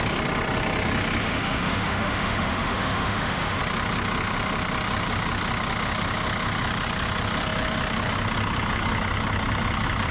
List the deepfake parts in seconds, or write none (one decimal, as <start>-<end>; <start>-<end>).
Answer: 1.2-3.6